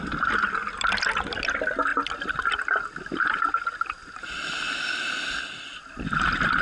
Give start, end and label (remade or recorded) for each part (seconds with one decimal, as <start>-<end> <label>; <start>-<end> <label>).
0.0-6.6 recorded